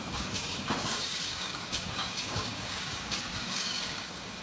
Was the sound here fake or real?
fake